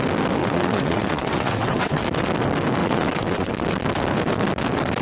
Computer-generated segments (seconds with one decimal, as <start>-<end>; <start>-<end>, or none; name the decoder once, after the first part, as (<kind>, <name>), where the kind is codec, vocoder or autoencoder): 0.4-2.0 (vocoder, WaveNeXt); 2.8-3.5